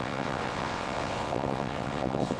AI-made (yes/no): yes